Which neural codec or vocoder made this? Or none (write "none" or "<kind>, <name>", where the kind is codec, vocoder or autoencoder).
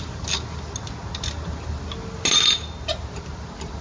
none